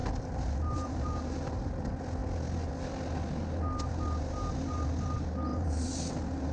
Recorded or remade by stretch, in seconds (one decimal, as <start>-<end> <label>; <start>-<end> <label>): 0.0-1.8 remade; 1.8-5.5 recorded; 5.5-6.1 remade; 6.1-6.5 recorded